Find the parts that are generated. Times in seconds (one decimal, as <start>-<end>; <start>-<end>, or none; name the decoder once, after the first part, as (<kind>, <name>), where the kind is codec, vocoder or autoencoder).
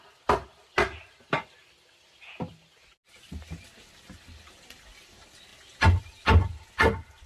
none